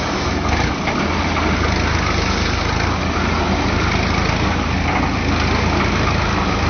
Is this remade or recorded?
recorded